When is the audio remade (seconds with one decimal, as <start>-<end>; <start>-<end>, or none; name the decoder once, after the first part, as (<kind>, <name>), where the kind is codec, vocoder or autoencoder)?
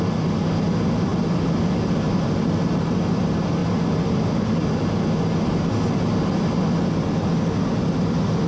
none